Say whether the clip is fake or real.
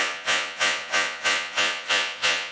fake